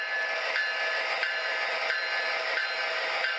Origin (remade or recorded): recorded